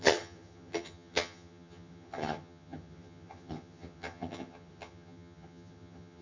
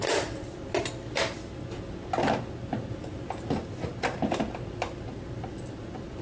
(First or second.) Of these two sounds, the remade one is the first